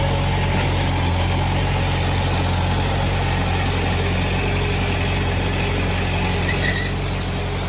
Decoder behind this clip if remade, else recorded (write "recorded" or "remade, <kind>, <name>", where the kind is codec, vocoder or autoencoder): recorded